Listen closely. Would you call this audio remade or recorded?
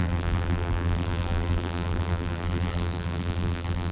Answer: remade